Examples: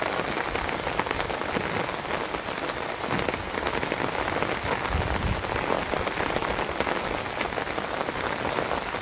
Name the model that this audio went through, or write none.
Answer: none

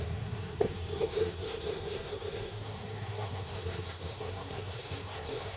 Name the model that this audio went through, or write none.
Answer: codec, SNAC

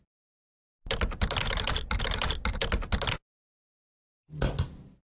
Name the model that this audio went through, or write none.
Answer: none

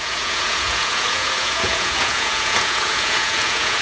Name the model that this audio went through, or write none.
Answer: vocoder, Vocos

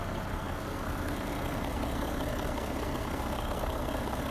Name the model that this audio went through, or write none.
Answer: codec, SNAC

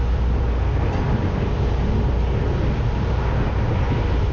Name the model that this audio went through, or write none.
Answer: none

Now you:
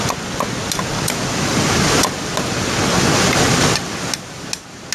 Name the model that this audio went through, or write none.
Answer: none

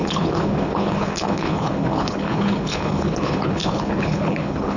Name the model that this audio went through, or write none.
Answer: codec, HILCodec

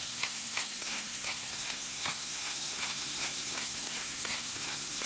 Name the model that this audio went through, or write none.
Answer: codec, SNAC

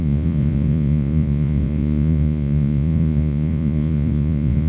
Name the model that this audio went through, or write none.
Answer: vocoder, Vocos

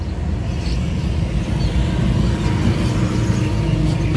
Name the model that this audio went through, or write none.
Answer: none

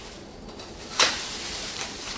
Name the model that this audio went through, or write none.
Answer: vocoder, BigVGAN v2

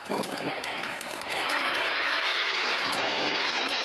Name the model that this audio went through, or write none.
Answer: codec, SNAC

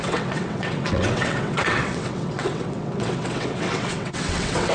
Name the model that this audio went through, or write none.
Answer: vocoder, WaveNeXt